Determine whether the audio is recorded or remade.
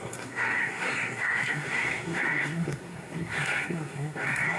remade